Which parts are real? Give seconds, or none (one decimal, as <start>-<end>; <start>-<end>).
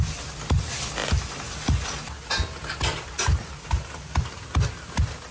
0.0-5.3